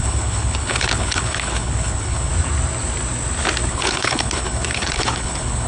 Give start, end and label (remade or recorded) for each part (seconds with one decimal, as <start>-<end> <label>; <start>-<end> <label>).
0.0-2.3 remade; 2.3-3.7 recorded; 3.7-5.7 remade